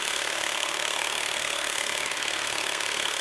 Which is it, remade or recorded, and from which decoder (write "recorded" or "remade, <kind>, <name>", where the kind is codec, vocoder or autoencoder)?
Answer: remade, codec, SNAC